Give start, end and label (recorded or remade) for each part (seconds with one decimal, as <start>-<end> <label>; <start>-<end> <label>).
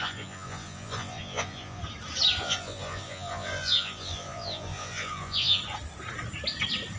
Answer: 0.0-1.8 remade; 1.8-2.4 recorded; 2.4-5.6 remade; 5.6-7.0 recorded